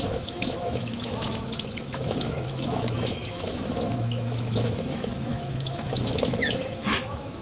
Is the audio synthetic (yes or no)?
yes